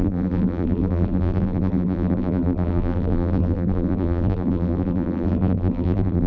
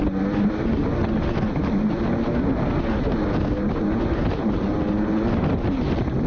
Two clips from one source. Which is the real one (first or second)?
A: second